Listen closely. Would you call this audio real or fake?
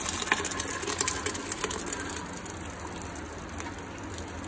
real